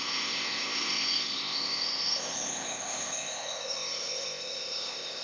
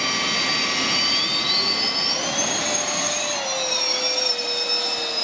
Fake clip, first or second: first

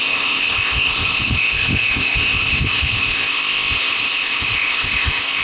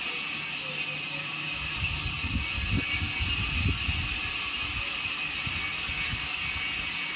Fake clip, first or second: first